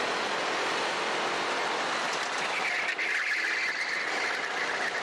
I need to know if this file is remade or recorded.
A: recorded